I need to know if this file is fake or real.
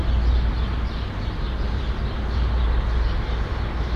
real